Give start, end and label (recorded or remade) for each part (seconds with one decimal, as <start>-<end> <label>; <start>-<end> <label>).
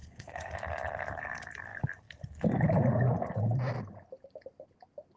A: 0.0-0.5 remade; 0.5-5.2 recorded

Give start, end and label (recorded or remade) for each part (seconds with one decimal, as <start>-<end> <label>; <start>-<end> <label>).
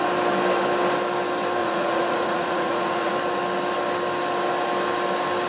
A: 0.0-1.6 recorded; 1.6-3.1 remade; 3.1-5.5 recorded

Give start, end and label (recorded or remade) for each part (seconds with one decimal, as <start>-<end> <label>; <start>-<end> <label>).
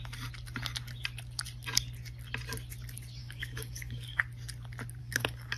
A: 0.0-3.2 recorded; 3.2-4.2 remade; 4.2-5.0 recorded; 5.0-5.6 remade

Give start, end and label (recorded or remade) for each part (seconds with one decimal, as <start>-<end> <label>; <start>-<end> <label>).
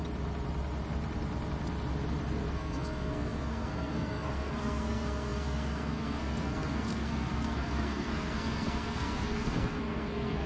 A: 0.0-2.5 recorded; 2.5-10.5 remade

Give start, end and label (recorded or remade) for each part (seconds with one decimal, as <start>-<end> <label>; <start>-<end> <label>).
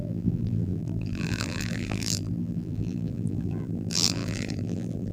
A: 0.0-5.1 remade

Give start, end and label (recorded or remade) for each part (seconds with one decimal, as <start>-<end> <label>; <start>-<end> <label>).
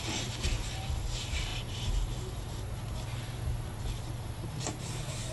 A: 0.0-5.3 remade